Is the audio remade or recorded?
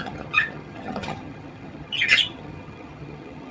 remade